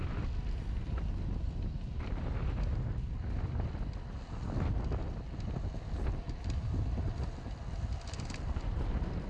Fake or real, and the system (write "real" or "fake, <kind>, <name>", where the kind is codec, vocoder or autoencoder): real